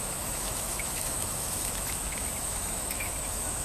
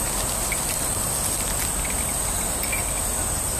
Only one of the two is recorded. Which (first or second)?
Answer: second